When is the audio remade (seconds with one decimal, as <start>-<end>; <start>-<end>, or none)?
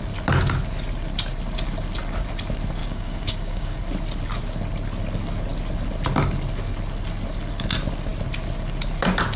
2.8-3.8